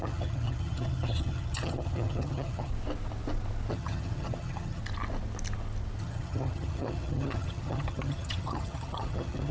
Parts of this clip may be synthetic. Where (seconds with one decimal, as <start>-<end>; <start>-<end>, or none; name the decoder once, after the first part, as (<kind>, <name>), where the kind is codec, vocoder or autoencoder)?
0.0-2.7 (vocoder, HiFi-GAN); 3.7-4.8; 6.0-9.5